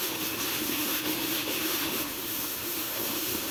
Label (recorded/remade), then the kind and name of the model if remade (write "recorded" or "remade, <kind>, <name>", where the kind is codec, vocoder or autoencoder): remade, autoencoder, DAC-VAE